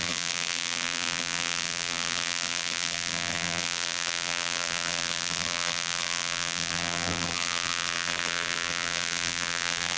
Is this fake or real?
fake